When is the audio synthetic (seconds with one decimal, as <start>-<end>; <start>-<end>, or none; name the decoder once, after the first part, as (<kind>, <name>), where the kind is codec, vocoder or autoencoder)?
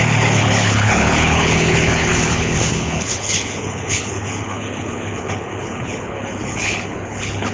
0.0-7.5 (codec, HILCodec)